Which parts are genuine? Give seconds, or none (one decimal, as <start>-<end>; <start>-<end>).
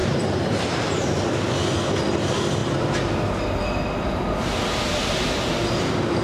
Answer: 1.3-6.2